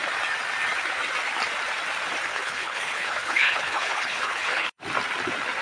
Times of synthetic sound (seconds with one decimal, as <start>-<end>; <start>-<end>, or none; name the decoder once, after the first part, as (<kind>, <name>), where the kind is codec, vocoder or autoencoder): 2.3-4.8 (codec, HILCodec)